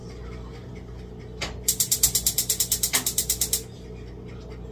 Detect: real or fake real